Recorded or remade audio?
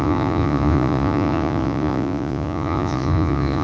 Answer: remade